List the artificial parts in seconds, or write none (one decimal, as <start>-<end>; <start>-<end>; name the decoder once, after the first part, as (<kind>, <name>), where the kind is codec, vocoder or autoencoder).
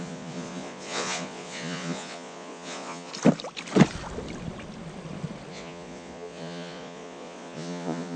0.0-3.1 (vocoder, Vocos); 5.5-8.2